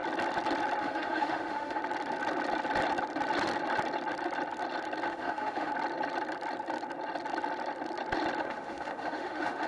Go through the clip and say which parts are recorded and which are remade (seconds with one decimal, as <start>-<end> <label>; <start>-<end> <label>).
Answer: 0.0-0.8 recorded; 0.8-1.8 remade; 1.8-5.1 recorded; 5.1-5.7 remade; 5.7-8.4 recorded; 8.4-9.7 remade